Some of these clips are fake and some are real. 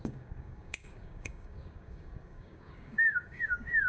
fake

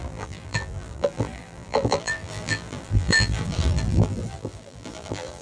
fake